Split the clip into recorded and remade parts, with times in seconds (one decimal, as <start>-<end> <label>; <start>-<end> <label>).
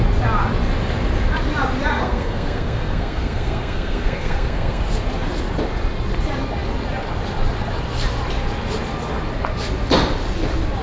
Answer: 0.0-1.9 recorded; 1.9-4.8 remade; 4.8-10.8 recorded